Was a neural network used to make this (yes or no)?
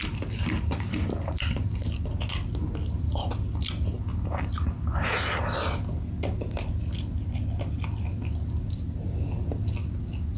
no